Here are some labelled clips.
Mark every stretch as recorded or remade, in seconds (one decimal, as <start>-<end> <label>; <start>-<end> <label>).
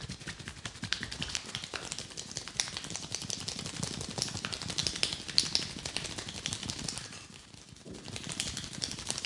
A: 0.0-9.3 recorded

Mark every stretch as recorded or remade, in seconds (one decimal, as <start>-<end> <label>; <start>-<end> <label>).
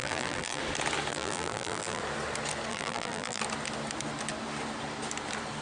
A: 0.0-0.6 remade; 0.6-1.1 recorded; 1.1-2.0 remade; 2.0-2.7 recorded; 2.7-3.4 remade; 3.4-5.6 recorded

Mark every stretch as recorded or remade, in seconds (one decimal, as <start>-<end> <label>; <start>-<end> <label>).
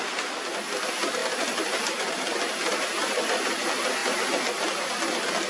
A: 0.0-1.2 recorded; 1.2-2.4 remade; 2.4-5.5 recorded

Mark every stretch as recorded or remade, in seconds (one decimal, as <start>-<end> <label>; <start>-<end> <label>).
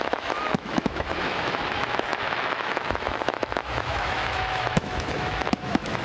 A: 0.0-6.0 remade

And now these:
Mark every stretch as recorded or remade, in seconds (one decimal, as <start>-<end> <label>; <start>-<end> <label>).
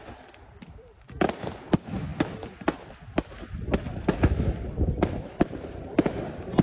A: 0.0-6.6 recorded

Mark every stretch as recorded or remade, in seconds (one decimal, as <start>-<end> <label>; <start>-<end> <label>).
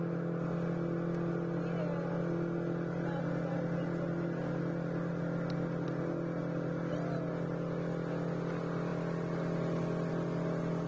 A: 0.0-10.9 recorded